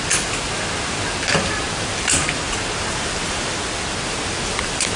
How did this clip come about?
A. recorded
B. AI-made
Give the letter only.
A